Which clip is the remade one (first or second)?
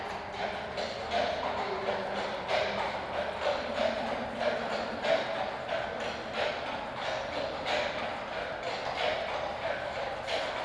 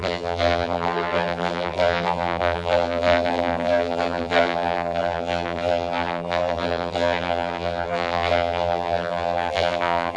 second